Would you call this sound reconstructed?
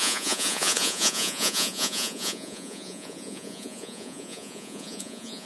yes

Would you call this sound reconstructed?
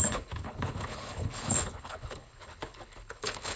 yes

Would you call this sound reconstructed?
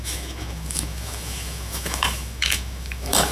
yes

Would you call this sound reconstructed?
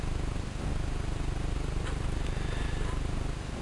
no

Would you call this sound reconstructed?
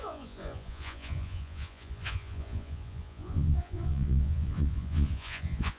yes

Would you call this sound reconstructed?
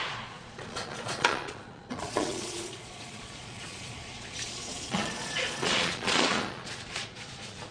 yes